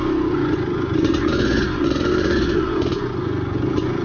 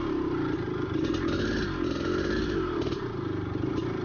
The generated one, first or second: first